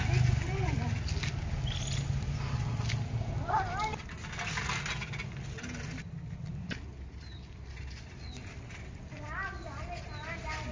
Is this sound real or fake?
real